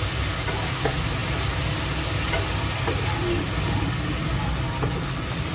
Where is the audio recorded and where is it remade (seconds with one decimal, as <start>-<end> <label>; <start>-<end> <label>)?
0.0-1.2 recorded; 1.2-3.1 remade; 3.1-5.5 recorded